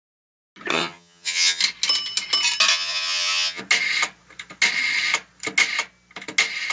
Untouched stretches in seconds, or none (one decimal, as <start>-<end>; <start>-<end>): 0.0-0.7; 1.6-2.7; 3.6-6.7